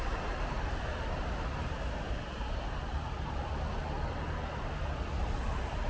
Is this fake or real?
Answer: real